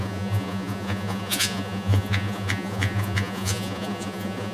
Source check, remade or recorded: remade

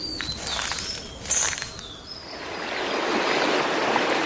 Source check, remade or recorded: recorded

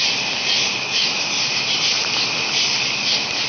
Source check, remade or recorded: recorded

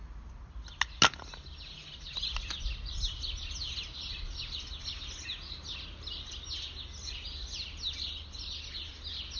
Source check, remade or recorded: recorded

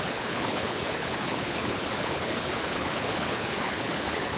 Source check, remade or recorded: remade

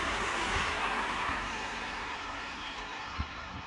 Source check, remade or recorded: remade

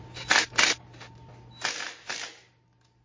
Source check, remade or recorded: recorded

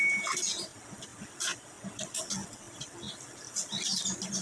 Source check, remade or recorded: recorded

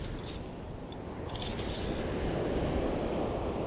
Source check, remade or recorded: recorded